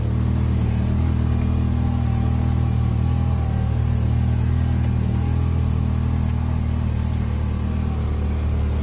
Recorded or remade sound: recorded